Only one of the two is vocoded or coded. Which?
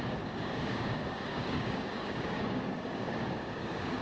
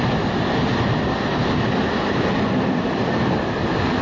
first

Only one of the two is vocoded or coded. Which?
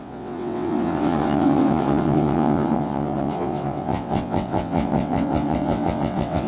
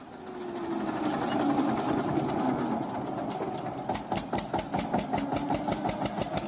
first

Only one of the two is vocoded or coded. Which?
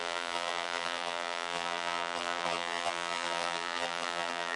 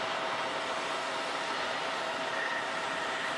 first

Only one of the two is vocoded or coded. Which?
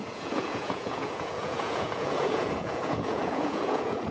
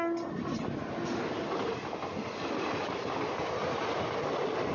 first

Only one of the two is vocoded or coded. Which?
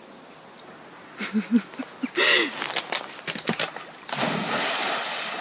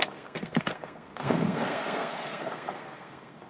second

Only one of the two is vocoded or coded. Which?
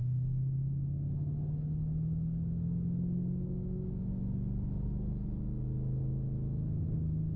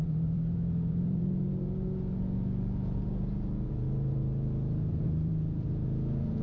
second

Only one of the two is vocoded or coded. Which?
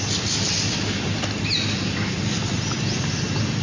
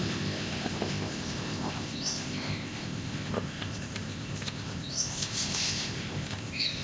second